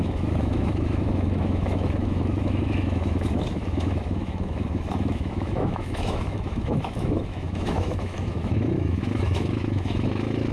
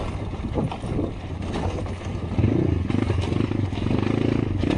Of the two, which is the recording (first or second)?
second